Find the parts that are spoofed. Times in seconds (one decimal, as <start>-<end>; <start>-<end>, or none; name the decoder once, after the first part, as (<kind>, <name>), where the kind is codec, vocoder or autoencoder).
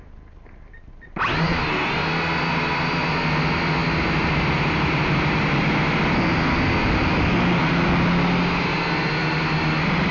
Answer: 3.8-5.4 (vocoder, BigVGAN v2)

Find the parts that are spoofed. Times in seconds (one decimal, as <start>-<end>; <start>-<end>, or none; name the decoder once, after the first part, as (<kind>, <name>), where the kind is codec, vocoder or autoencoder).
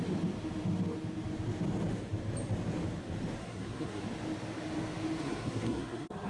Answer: 3.4-4.0 (codec, SNAC); 5.2-6.3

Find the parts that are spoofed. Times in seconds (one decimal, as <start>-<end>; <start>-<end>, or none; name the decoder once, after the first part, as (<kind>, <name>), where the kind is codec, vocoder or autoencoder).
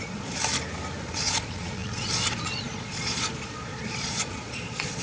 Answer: 0.0-0.4 (vocoder, Vocos); 1.0-5.0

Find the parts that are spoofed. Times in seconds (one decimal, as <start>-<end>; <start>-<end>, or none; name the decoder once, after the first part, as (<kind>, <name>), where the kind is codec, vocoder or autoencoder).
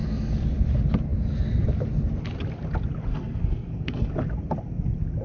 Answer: 3.1-4.1 (codec, SNAC)